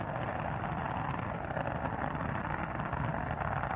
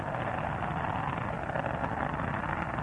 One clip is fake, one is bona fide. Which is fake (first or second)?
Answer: first